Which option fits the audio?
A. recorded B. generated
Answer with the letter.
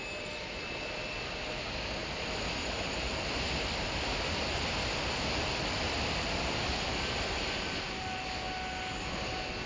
A